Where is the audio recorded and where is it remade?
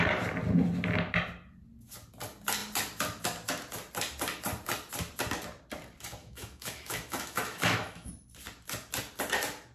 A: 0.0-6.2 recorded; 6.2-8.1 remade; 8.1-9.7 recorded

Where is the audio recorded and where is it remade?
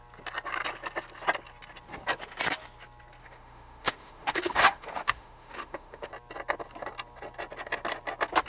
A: 0.0-3.2 recorded; 3.2-6.1 remade; 6.1-8.5 recorded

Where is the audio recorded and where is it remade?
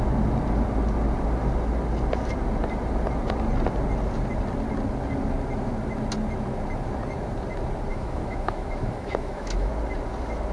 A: 0.0-7.9 recorded; 7.9-9.7 remade; 9.7-10.5 recorded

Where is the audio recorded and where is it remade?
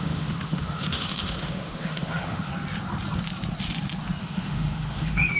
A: 0.0-2.5 remade; 2.5-4.2 recorded; 4.2-5.4 remade